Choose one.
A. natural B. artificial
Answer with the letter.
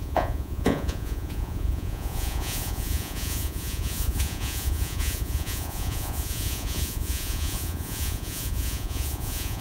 B